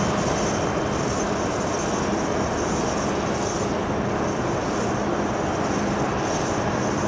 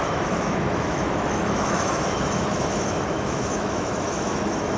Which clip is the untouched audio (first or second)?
first